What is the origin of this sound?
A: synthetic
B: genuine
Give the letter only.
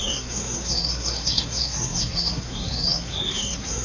A